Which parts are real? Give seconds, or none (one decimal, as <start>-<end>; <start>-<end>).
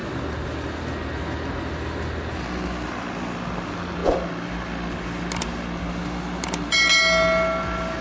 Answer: 0.0-8.0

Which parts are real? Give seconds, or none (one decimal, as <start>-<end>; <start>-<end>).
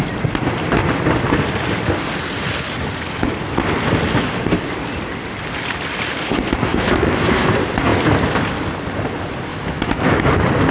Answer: 0.0-6.7; 7.5-9.5; 10.2-10.7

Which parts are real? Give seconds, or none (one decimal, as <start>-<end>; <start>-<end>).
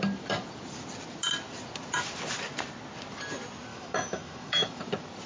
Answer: 0.0-3.7; 4.8-5.3